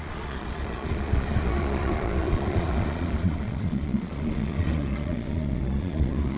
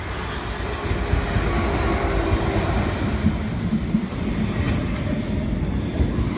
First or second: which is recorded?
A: second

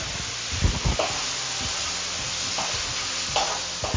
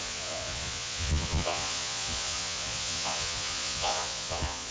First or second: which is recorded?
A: first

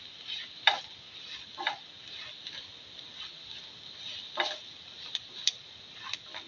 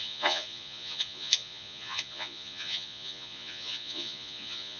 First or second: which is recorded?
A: first